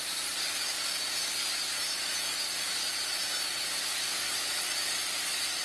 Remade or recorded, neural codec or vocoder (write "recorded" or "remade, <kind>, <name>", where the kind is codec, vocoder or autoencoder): recorded